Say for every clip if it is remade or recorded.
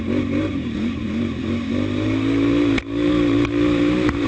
remade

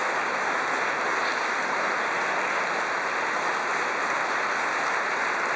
recorded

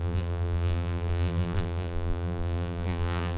remade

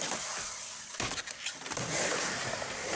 remade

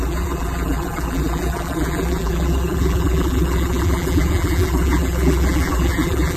remade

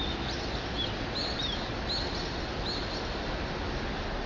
recorded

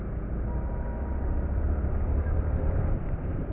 remade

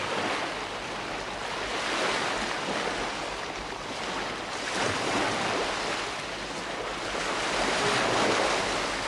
recorded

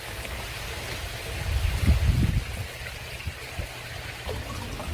recorded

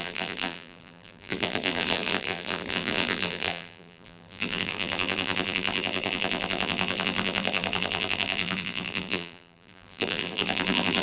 remade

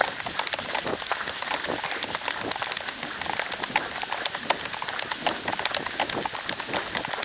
recorded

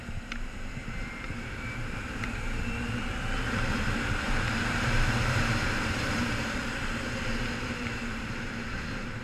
remade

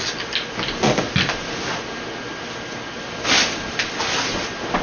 recorded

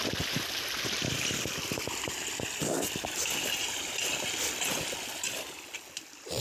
remade